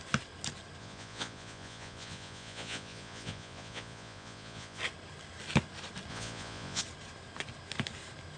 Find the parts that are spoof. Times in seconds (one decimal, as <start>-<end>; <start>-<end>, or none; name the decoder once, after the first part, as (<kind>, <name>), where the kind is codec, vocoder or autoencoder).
0.8-4.8 (vocoder, Vocos); 6.1-6.8